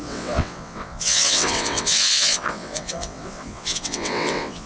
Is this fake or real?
fake